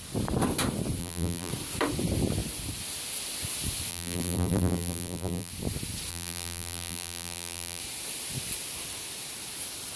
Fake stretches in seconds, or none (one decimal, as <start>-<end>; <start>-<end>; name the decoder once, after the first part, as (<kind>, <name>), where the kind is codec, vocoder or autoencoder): 1.0-1.5 (vocoder, BigVGAN v2); 3.9-5.5; 6.1-7.8